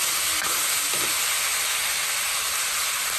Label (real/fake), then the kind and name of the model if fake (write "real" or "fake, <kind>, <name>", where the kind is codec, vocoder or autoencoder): real